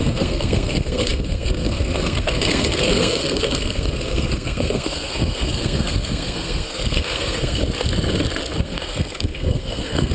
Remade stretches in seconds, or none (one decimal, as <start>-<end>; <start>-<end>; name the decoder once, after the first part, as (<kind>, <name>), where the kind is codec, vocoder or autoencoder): 0.0-7.6 (codec, SNAC); 8.6-10.1